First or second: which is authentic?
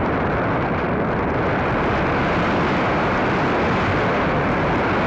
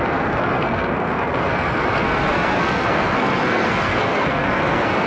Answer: first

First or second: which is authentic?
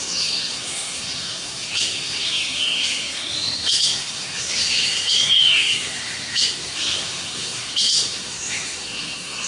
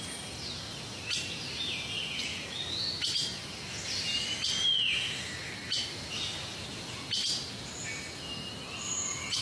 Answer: second